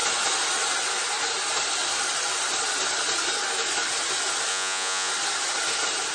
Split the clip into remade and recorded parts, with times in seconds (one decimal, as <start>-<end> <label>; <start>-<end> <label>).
0.0-4.5 recorded; 4.5-5.1 remade; 5.1-6.1 recorded